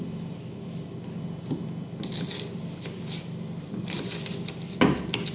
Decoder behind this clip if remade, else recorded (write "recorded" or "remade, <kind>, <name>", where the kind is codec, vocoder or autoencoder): recorded